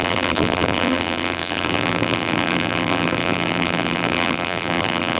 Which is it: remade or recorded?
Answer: remade